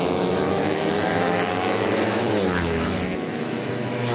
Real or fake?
fake